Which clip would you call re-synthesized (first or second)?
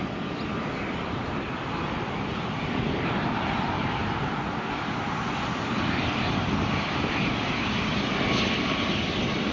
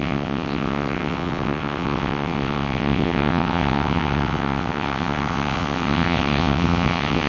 second